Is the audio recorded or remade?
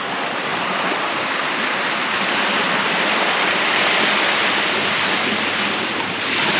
recorded